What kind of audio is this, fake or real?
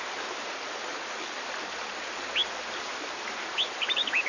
real